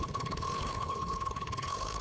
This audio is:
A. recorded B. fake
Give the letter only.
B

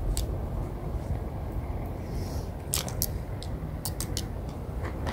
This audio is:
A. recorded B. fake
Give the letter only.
A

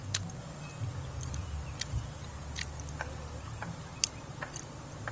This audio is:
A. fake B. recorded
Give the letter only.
B